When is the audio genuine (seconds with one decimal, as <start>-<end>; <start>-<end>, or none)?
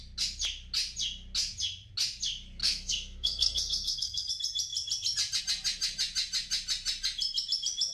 0.0-2.6; 4.3-7.9